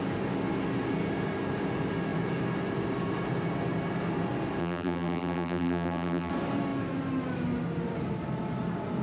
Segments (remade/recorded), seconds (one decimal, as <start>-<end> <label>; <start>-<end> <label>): 0.0-4.6 recorded; 4.6-6.3 remade; 6.3-9.0 recorded